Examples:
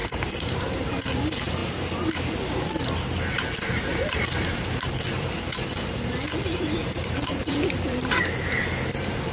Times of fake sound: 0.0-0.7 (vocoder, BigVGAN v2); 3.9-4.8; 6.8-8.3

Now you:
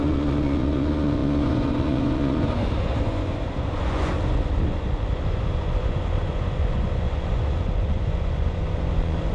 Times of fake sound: 0.0-9.3 (vocoder, Vocos)

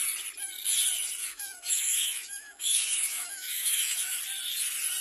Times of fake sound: 1.2-4.2 (autoencoder, DAC-VAE)

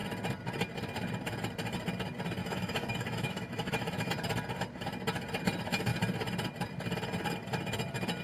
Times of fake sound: 2.4-4.1 (autoencoder, DAC-VAE)

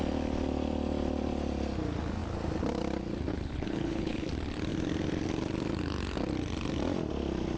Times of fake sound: 3.3-4.3 (codec, HILCodec)

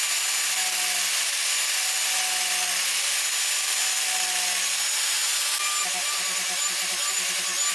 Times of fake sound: none